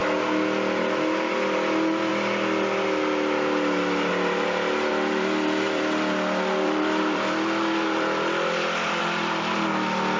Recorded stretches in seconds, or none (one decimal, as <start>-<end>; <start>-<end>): 0.0-4.9; 9.0-10.2